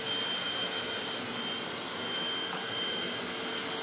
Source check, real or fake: real